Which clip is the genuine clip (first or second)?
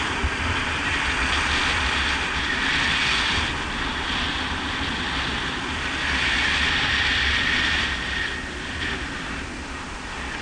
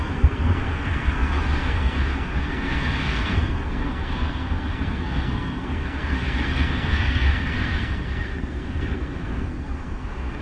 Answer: first